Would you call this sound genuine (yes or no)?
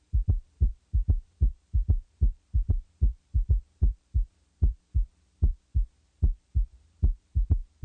no